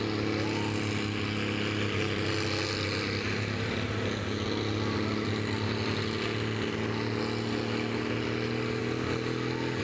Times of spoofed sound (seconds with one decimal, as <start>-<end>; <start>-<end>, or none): none